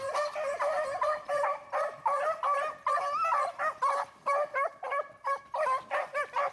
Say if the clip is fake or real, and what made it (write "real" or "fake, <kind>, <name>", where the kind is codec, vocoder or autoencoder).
fake, vocoder, BigVGAN v2